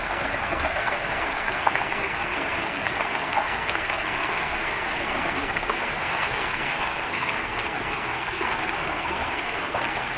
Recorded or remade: remade